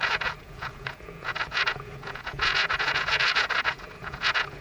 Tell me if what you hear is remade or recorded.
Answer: remade